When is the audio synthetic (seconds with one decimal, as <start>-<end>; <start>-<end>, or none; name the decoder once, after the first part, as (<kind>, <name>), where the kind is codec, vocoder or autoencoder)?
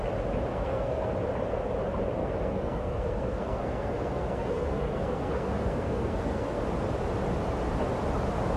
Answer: 0.5-1.1 (codec, SNAC); 2.2-6.6